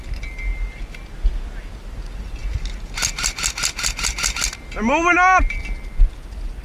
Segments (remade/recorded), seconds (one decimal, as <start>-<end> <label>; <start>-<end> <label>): 0.0-6.6 recorded